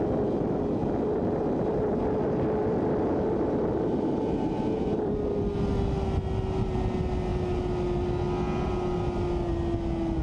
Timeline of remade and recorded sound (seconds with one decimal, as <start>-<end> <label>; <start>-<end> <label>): 0.0-2.6 recorded; 2.6-5.1 remade; 5.1-10.2 recorded